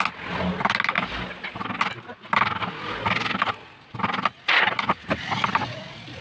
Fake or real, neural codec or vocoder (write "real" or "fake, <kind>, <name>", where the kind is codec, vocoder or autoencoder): real